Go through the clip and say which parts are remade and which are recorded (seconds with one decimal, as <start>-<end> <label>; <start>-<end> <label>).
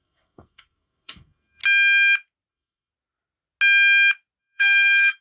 0.0-1.6 remade; 1.6-2.5 recorded; 2.5-2.9 remade; 2.9-4.4 recorded; 4.4-5.2 remade